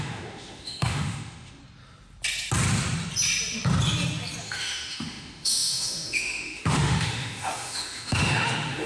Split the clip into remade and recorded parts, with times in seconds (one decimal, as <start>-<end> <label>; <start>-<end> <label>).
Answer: 0.0-1.6 remade; 1.6-4.4 recorded; 4.4-8.9 remade